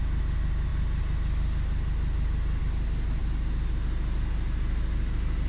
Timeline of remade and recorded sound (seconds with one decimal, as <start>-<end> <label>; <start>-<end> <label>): 0.0-5.5 recorded